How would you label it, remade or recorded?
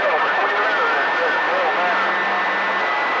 recorded